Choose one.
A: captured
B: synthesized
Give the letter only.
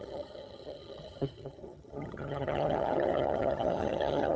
B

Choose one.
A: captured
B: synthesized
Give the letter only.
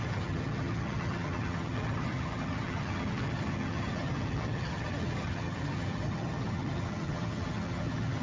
B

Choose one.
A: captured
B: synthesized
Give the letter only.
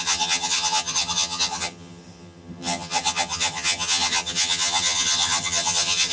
B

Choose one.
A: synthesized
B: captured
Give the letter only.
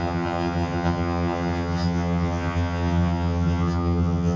A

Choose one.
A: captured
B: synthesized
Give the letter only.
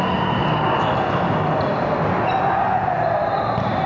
A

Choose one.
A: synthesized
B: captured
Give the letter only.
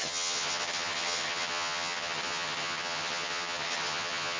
A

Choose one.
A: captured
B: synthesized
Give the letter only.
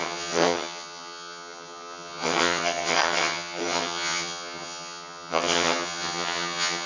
B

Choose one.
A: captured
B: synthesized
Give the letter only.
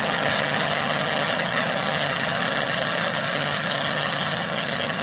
B